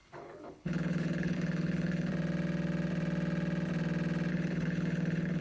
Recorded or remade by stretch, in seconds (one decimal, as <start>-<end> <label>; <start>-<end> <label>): 0.0-2.1 remade; 2.1-4.3 recorded; 4.3-5.4 remade

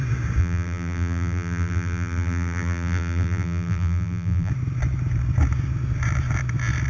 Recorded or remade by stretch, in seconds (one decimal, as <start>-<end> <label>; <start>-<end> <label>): 0.0-0.4 recorded; 0.4-4.5 remade; 4.5-6.9 recorded

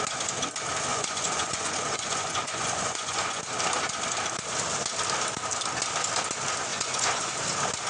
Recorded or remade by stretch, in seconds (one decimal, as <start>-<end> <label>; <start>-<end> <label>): 0.0-0.9 recorded; 0.9-3.4 remade; 3.4-6.7 recorded; 6.7-7.3 remade; 7.3-7.9 recorded

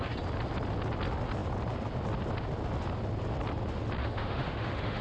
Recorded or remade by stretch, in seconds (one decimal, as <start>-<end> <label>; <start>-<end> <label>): 0.0-4.0 recorded; 4.0-5.0 remade

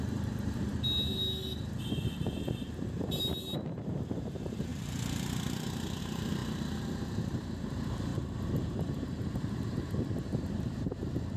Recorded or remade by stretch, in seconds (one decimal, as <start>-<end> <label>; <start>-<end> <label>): 0.0-0.7 remade; 0.7-1.8 recorded; 1.8-11.4 remade

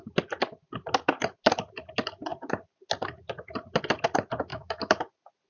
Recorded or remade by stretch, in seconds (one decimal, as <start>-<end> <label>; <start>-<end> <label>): 0.0-4.5 recorded; 4.5-5.0 remade; 5.0-5.5 recorded